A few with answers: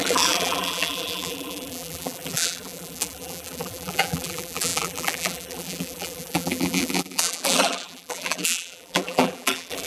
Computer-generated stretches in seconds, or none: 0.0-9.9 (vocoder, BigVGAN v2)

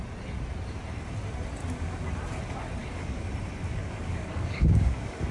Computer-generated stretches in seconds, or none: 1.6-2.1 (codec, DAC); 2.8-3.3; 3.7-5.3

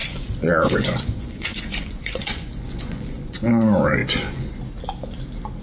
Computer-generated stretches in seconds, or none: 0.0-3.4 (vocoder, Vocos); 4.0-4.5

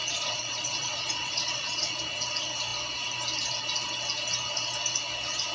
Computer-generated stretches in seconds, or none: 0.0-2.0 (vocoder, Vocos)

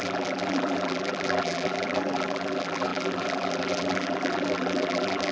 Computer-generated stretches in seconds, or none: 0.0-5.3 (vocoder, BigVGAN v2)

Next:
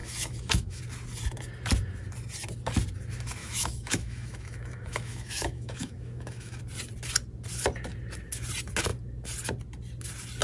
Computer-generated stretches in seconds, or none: 0.0-0.8 (autoencoder, DAC-VAE); 3.4-6.6

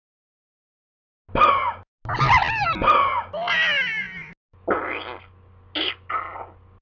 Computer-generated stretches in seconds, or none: none